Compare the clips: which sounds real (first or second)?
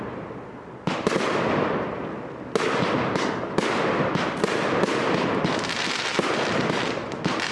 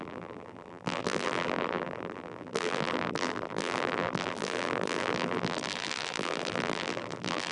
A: first